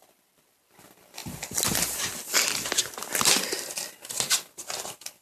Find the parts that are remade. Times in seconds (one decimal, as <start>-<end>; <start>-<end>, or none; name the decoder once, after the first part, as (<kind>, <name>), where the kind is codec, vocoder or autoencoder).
none